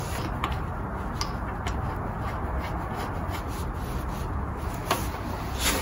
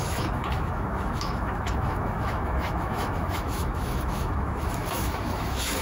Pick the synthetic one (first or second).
second